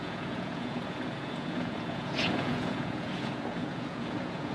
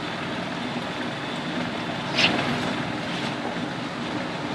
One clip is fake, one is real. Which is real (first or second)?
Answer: second